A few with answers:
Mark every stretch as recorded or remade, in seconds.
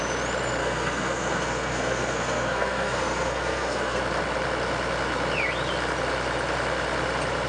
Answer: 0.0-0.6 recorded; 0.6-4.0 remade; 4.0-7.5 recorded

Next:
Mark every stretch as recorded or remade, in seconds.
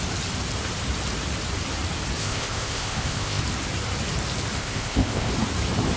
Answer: 0.0-2.2 recorded; 2.2-3.4 remade; 3.4-4.6 recorded; 4.6-5.3 remade; 5.3-6.0 recorded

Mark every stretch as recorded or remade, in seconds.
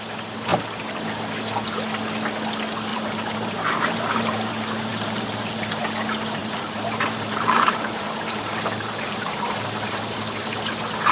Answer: 0.0-0.5 recorded; 0.5-1.1 remade; 1.1-2.9 recorded; 2.9-4.5 remade; 4.5-4.9 recorded; 4.9-5.8 remade; 5.8-6.4 recorded; 6.4-9.9 remade; 9.9-11.1 recorded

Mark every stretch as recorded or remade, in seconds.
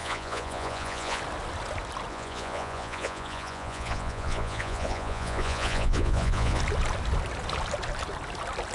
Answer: 0.0-1.2 remade; 1.2-2.1 recorded; 2.1-6.6 remade; 6.6-8.7 recorded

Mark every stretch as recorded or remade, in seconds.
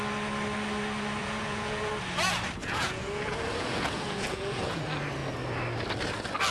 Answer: 0.0-1.2 recorded; 1.2-1.9 remade; 1.9-2.6 recorded; 2.6-4.8 remade; 4.8-6.5 recorded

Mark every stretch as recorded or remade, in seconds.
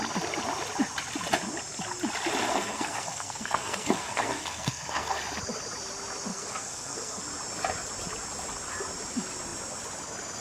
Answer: 0.0-2.5 recorded; 2.5-5.2 remade; 5.2-6.3 recorded; 6.3-7.2 remade; 7.2-10.4 recorded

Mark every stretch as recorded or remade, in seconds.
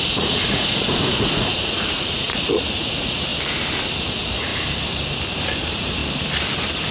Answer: 0.0-3.3 remade; 3.3-4.1 recorded; 4.1-4.5 remade; 4.5-5.6 recorded; 5.6-6.0 remade; 6.0-6.9 recorded